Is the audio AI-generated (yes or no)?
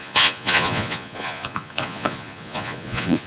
yes